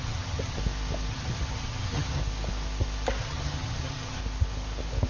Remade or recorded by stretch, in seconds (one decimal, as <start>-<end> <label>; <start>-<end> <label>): 0.0-0.6 remade; 0.6-1.1 recorded; 1.1-2.2 remade; 2.2-3.2 recorded; 3.2-4.2 remade; 4.2-5.1 recorded